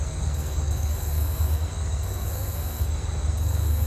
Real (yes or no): no